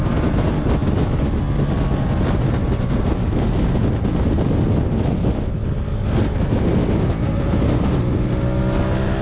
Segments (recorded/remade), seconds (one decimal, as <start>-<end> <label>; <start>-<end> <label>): 0.0-0.8 recorded; 0.8-1.4 remade; 1.4-9.2 recorded